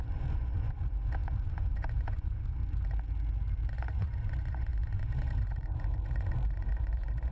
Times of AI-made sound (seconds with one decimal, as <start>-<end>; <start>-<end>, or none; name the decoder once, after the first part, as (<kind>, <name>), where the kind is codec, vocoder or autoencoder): 0.0-2.6 (vocoder, Vocos); 3.7-7.3